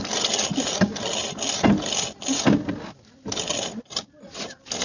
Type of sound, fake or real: real